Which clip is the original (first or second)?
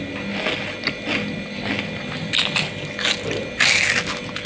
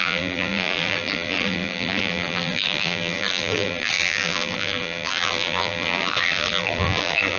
first